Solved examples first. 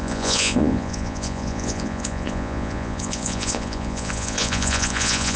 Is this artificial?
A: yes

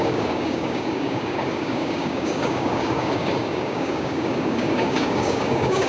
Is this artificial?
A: yes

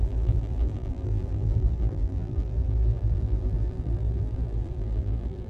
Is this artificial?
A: yes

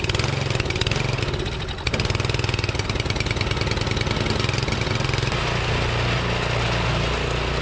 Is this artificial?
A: no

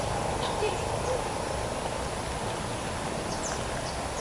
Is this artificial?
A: no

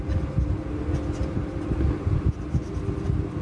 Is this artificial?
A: no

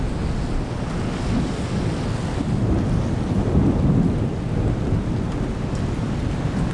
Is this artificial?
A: no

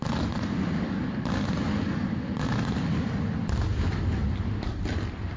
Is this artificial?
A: no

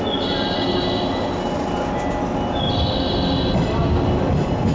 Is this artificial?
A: no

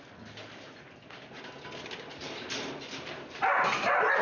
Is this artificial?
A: no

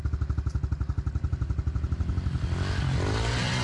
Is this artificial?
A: no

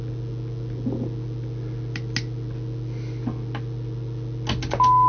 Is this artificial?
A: no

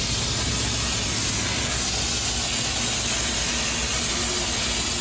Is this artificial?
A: no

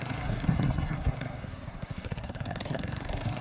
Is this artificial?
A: yes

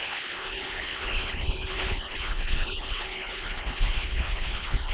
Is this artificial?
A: yes